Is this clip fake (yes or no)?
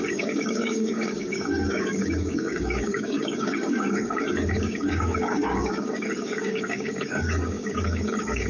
yes